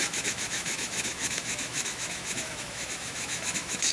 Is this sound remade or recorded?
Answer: remade